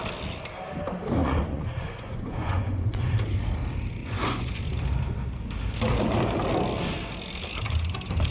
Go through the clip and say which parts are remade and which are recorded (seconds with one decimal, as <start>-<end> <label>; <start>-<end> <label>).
0.0-1.2 recorded; 1.2-3.1 remade; 3.1-4.0 recorded; 4.0-4.6 remade; 4.6-8.3 recorded